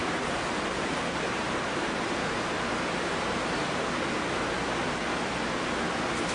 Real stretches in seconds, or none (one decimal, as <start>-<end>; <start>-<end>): 3.8-6.3